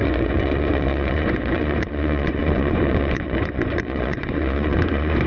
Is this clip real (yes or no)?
no